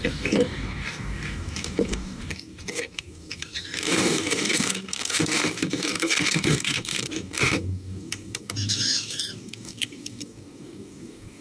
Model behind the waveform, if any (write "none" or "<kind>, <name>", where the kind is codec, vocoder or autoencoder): codec, DAC